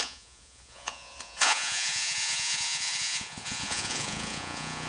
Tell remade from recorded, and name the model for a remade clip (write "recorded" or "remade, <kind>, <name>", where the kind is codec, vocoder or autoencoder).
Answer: remade, vocoder, Vocos